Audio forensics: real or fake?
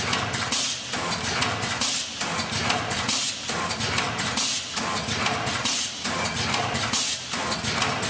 real